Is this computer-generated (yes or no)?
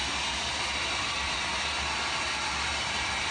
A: yes